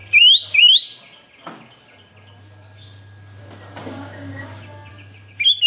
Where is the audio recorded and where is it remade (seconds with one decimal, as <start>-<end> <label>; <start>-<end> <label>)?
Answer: 0.0-3.8 recorded; 3.8-4.9 remade; 4.9-5.7 recorded